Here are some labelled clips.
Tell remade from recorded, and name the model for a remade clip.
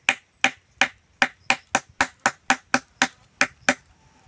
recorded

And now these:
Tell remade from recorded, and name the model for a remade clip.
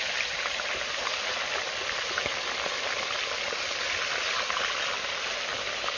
recorded